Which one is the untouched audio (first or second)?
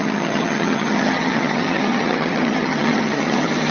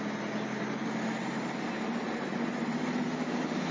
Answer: second